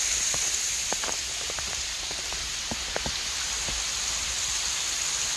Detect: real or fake real